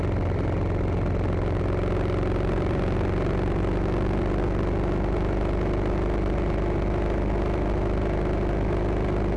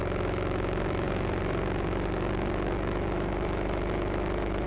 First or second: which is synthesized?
second